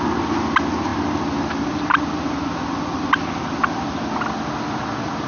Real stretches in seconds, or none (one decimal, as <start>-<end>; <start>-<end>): 0.0-5.3